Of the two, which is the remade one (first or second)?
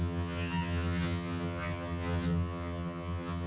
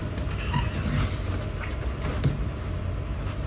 first